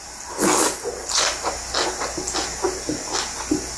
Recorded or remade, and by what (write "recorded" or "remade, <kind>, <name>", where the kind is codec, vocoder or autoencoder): recorded